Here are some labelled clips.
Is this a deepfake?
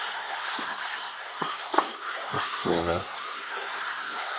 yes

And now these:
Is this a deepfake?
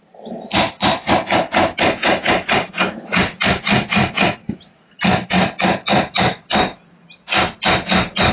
no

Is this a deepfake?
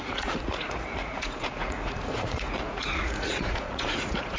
yes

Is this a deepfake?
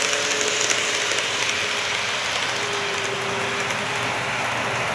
no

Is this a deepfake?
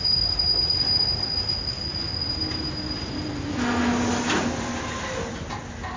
no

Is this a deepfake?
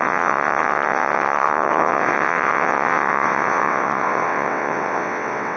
yes